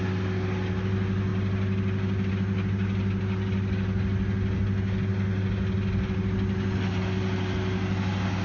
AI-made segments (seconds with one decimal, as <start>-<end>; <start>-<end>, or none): none